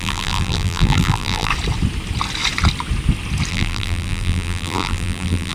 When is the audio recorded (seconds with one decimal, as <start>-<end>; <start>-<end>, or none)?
1.5-3.5